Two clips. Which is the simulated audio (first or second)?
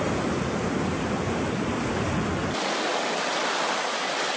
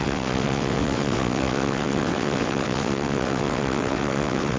second